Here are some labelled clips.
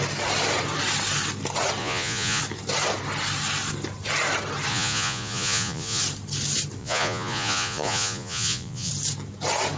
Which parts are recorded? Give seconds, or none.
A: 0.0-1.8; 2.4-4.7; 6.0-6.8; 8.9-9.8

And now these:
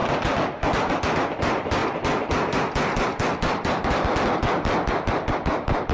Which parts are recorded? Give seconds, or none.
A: 0.0-5.9

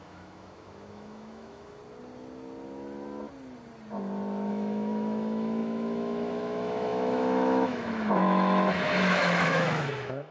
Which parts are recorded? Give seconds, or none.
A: 1.8-4.5

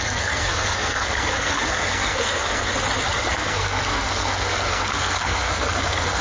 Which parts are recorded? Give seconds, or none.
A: 2.7-3.3

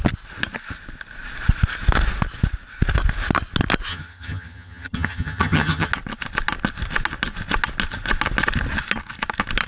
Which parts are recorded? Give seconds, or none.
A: 0.0-3.9; 5.9-9.7

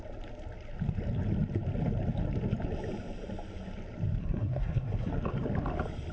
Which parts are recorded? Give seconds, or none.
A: 0.0-4.2; 5.1-6.1